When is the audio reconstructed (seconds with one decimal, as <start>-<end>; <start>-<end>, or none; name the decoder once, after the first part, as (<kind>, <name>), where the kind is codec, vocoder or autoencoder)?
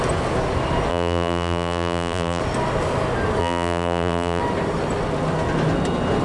0.9-2.4 (vocoder, BigVGAN v2); 3.4-4.4